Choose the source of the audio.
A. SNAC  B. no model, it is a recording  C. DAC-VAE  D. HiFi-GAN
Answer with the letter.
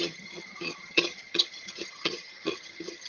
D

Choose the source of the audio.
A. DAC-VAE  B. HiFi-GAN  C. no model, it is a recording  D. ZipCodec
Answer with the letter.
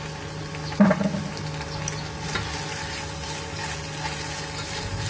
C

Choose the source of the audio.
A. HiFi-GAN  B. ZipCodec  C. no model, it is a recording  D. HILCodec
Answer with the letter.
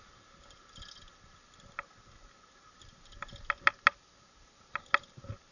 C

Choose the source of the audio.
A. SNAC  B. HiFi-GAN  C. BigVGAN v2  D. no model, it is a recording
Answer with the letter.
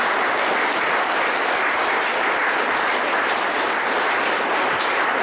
D